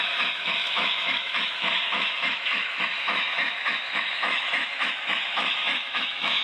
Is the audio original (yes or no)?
no